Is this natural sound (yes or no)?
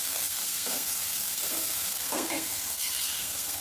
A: no